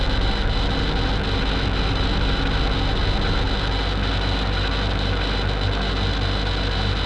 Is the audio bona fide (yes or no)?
yes